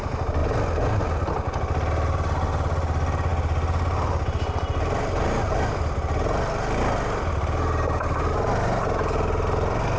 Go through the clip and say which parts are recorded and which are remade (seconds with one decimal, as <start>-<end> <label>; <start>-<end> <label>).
0.0-10.0 recorded